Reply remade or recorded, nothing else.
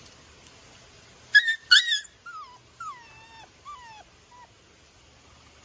recorded